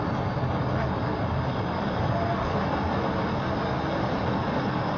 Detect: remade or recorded recorded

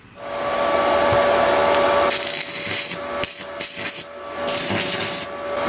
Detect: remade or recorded recorded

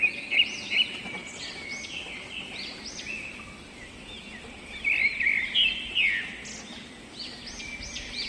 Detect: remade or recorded recorded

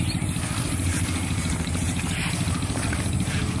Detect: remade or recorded recorded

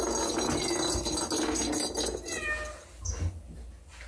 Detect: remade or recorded recorded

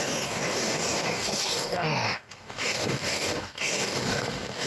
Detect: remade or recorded remade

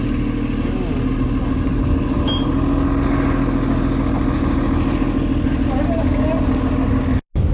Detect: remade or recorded recorded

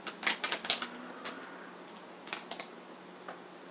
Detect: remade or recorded recorded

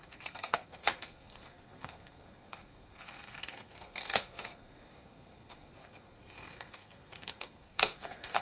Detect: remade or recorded remade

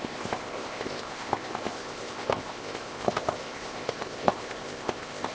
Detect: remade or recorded remade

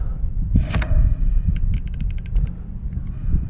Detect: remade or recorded recorded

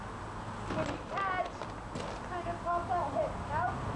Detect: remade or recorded recorded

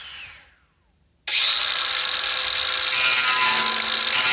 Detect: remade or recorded recorded